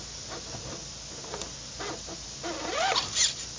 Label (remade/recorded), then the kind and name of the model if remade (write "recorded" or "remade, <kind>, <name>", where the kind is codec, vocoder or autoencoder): recorded